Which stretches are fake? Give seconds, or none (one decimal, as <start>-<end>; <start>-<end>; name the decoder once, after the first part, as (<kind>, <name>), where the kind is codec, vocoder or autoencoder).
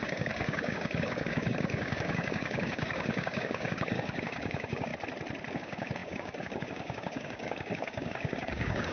0.0-4.9 (codec, DAC); 5.5-8.9